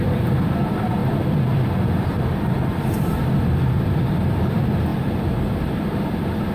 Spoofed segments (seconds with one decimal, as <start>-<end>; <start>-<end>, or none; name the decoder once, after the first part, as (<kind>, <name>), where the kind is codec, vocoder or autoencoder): 0.0-6.5 (vocoder, BigVGAN v2)